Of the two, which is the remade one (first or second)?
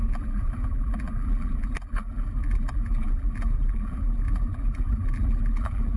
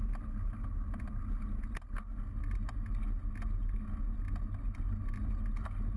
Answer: first